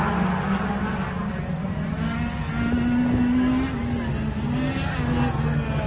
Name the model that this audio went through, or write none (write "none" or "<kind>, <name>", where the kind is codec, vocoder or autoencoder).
none